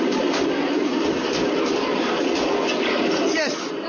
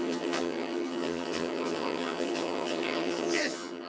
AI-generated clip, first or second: second